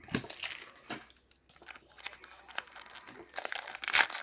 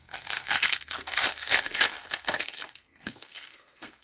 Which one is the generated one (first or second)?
second